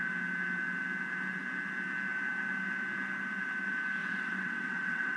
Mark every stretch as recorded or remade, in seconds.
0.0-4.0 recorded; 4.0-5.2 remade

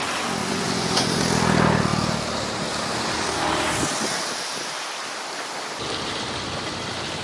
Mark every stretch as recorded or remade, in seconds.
0.0-0.4 recorded; 0.4-1.2 remade; 1.2-7.2 recorded

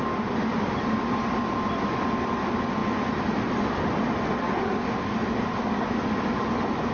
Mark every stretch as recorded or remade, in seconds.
0.0-6.9 recorded

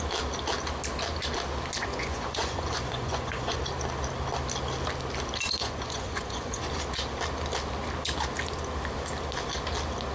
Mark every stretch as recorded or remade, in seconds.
0.0-1.8 recorded; 1.8-3.6 remade; 3.6-5.6 recorded; 5.6-6.6 remade; 6.6-10.1 recorded

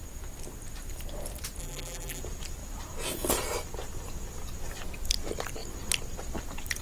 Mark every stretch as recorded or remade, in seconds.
0.0-1.6 recorded; 1.6-2.2 remade; 2.2-6.8 recorded

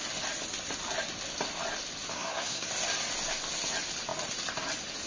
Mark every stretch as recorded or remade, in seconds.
0.0-2.1 recorded; 2.1-2.7 remade; 2.7-5.1 recorded